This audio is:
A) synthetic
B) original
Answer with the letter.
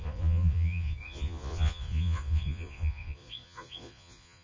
A